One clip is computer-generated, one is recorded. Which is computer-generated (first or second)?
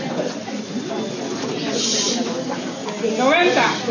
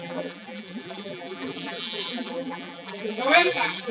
second